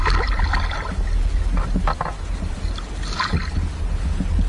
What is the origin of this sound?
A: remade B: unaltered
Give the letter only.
B